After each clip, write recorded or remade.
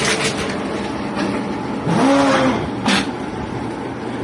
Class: recorded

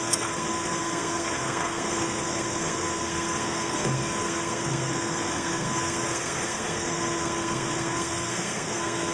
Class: remade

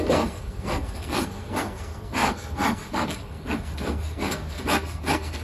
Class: remade